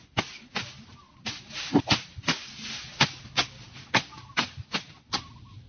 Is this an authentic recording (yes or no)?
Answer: yes